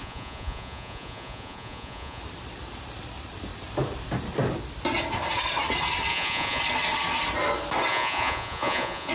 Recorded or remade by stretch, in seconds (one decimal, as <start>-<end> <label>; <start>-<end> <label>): 0.0-2.2 remade; 2.2-6.1 recorded; 6.1-6.6 remade; 6.6-7.9 recorded; 7.9-9.1 remade